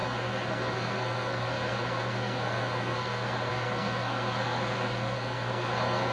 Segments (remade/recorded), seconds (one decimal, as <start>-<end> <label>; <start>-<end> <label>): 0.0-6.1 remade